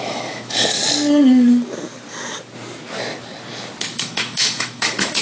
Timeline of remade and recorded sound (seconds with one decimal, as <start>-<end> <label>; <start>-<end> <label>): 0.0-0.8 remade; 0.8-3.9 recorded; 3.9-5.2 remade